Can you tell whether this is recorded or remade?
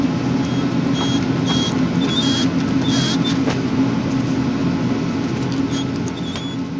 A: recorded